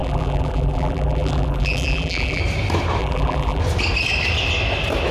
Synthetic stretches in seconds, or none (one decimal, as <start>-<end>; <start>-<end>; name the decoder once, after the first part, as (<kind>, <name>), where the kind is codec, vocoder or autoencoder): 0.0-2.4 (vocoder, BigVGAN v2); 3.0-3.6